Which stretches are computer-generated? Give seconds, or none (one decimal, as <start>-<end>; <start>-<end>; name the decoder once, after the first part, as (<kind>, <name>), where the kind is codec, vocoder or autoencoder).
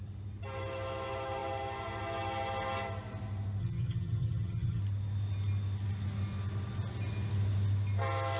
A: 3.6-4.8 (vocoder, HiFi-GAN)